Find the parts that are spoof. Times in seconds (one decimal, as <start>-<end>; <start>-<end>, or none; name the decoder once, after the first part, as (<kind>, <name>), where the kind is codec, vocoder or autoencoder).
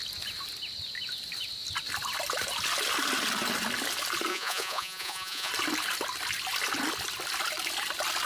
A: 4.3-5.5 (vocoder, Vocos)